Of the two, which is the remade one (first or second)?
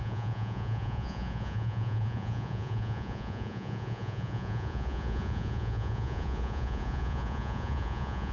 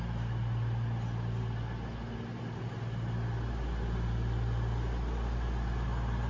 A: first